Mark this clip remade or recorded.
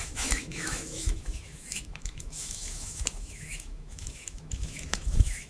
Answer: remade